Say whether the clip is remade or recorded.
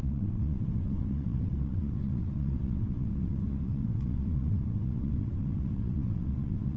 remade